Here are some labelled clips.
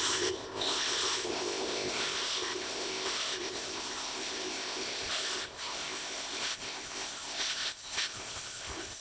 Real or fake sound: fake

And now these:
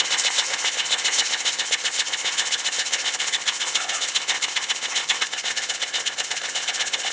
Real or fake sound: fake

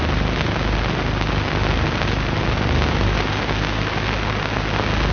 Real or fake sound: real